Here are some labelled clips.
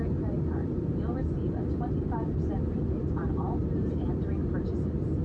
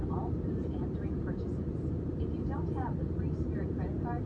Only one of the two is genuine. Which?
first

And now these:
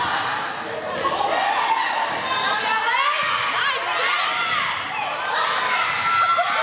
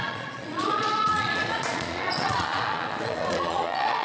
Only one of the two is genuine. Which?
first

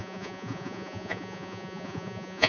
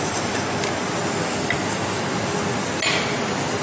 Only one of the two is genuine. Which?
second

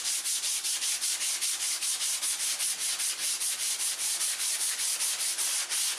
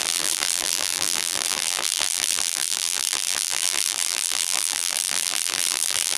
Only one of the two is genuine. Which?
first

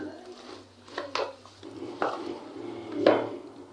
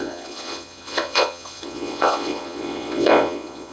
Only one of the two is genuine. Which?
first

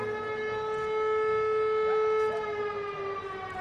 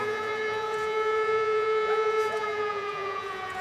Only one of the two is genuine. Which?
first